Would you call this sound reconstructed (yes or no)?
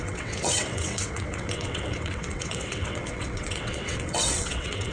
yes